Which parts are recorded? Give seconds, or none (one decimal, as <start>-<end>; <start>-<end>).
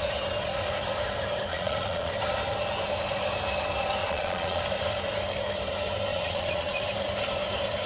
0.0-1.5; 2.1-4.0; 4.6-6.1; 6.8-7.9